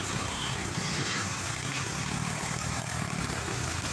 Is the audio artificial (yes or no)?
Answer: yes